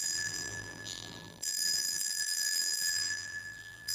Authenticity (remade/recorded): remade